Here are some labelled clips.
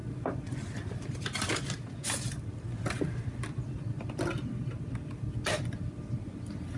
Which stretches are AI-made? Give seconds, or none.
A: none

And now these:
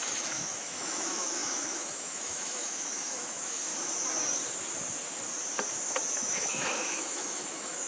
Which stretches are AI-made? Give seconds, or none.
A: 0.0-3.7 (autoencoder, DAC-VAE); 6.1-7.9